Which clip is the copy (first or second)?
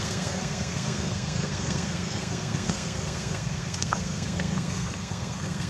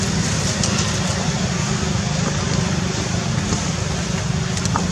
first